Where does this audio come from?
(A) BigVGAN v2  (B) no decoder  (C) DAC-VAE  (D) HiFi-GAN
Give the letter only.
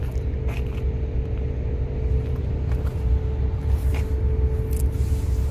B